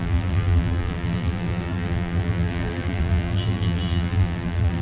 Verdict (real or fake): fake